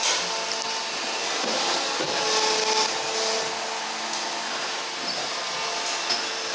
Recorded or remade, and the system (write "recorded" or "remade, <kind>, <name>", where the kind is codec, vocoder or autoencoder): recorded